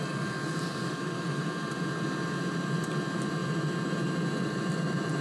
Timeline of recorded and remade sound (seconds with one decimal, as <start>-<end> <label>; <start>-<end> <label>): 0.0-0.8 recorded; 0.8-1.5 remade; 1.5-5.2 recorded